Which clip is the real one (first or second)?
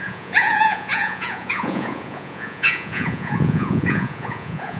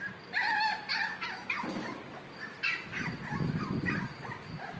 second